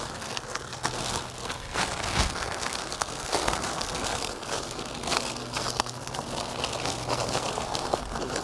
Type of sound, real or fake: fake